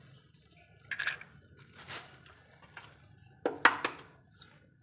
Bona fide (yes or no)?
yes